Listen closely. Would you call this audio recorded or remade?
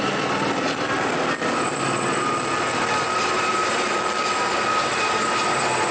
recorded